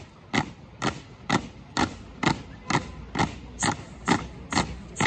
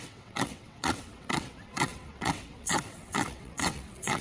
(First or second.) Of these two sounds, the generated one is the second